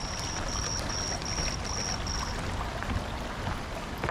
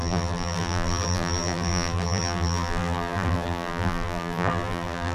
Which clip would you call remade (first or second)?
second